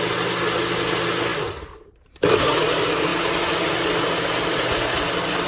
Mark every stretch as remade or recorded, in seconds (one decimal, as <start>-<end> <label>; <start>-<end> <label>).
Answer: 0.0-1.3 recorded; 1.3-2.1 remade; 2.1-5.5 recorded